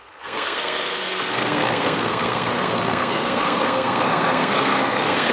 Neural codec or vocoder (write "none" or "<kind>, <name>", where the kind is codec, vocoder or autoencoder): codec, SNAC